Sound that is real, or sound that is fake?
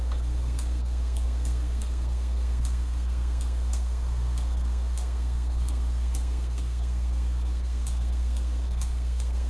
fake